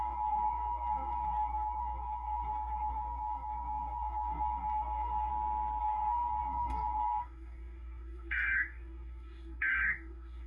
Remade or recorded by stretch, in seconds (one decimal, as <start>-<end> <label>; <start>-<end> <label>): 0.0-5.3 remade; 5.3-5.8 recorded; 5.8-10.5 remade